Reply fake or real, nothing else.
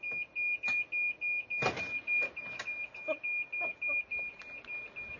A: real